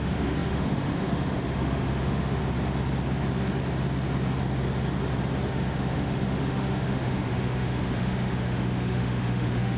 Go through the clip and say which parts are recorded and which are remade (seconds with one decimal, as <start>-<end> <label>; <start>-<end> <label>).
0.0-2.4 remade; 2.4-5.5 recorded; 5.5-9.8 remade

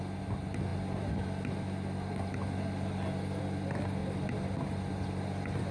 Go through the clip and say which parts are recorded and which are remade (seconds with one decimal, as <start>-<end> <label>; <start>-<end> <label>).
0.0-5.7 recorded

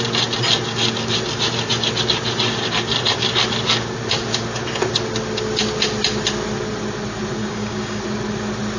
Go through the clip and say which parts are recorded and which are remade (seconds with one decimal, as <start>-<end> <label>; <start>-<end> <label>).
0.0-7.4 recorded; 7.4-8.0 remade; 8.0-8.8 recorded

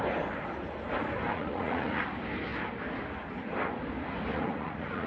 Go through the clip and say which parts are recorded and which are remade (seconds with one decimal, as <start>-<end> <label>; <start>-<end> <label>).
0.0-1.3 recorded; 1.3-2.0 remade; 2.0-4.3 recorded; 4.3-5.1 remade

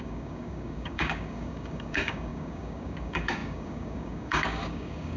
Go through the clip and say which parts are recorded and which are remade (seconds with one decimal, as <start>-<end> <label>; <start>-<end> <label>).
0.0-5.2 remade

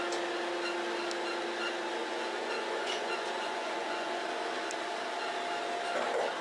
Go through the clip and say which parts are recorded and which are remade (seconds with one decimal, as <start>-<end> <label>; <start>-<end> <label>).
0.0-2.0 recorded; 2.0-4.2 remade; 4.2-6.4 recorded

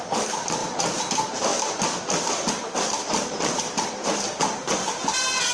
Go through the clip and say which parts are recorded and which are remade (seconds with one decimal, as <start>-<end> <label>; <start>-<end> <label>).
0.0-1.5 recorded; 1.5-4.3 remade; 4.3-5.5 recorded